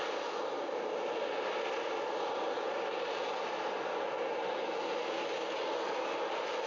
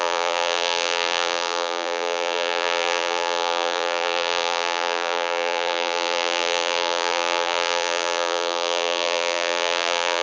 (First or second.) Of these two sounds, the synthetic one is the second